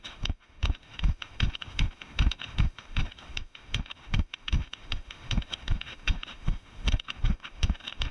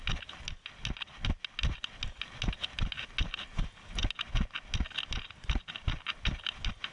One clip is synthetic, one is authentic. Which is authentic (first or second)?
second